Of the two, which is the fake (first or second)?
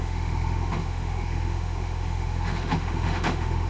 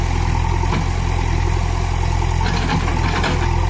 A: first